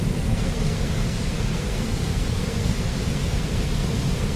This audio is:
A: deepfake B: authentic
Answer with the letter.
A